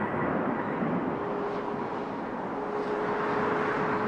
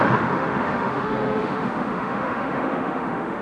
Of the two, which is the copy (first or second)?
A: second